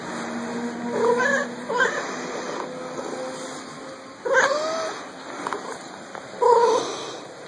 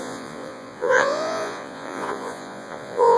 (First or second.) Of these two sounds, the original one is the first